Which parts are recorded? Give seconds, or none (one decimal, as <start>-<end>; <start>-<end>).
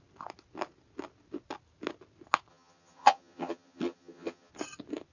0.0-2.5; 4.5-5.1